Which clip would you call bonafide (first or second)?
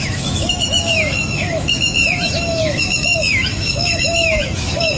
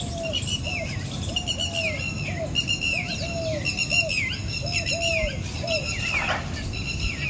second